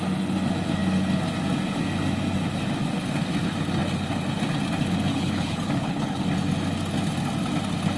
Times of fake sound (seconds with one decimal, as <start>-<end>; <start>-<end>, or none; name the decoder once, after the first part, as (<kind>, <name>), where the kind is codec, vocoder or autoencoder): 5.1-6.2 (codec, HILCodec)